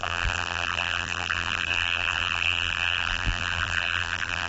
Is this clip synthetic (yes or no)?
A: yes